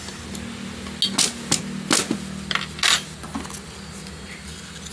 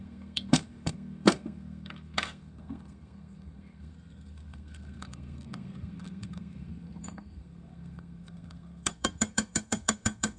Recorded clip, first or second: first